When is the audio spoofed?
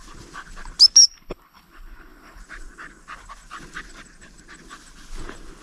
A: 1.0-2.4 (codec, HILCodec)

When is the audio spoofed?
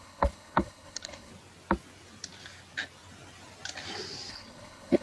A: 0.0-1.3 (codec, HILCodec); 4.3-5.0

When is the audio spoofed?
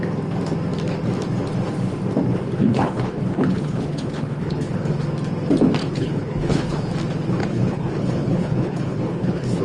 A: 2.6-5.0 (codec, HILCodec); 5.8-6.9; 7.4-9.6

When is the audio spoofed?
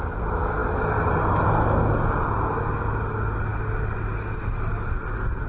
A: none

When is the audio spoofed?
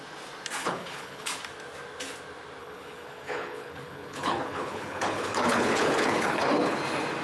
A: 0.6-1.3 (codec, HILCodec); 2.6-6.8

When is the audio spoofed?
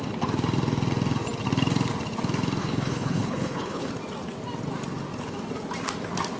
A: 2.6-3.9 (codec, HILCodec)